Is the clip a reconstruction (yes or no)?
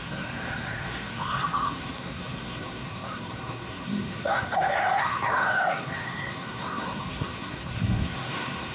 yes